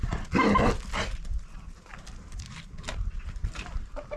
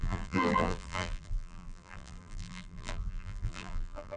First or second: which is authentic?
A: first